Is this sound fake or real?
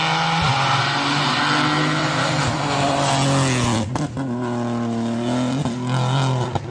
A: real